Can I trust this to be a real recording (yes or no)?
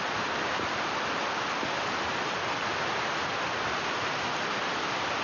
yes